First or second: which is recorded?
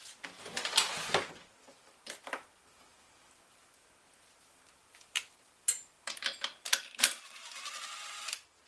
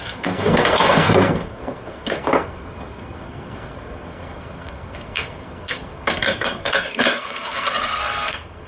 first